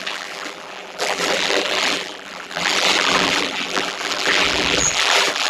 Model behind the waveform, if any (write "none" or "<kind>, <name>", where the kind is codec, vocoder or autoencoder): vocoder, BigVGAN v2